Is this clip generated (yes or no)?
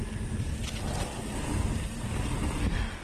no